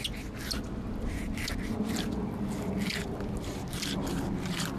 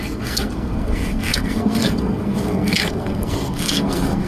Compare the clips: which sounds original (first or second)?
first